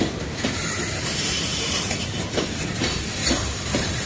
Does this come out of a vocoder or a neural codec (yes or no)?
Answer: yes